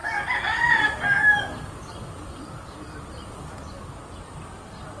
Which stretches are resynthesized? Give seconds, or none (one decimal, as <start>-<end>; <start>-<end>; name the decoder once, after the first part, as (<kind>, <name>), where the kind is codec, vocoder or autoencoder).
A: none